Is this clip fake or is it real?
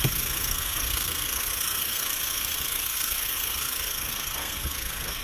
fake